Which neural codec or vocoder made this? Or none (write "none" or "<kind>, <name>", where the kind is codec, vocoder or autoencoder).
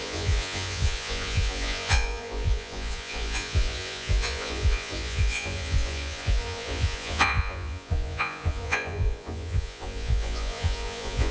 vocoder, Vocos